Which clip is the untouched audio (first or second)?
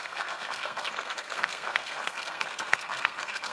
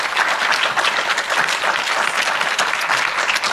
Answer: second